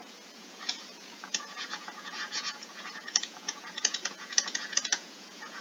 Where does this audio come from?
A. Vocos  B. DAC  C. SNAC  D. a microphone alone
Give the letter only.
A